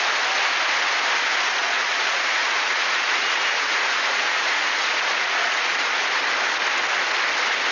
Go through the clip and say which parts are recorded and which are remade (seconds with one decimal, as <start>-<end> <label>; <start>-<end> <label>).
0.0-1.6 recorded; 1.6-6.2 remade; 6.2-7.7 recorded